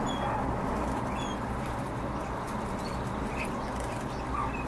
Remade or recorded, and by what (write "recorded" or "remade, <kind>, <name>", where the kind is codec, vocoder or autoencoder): recorded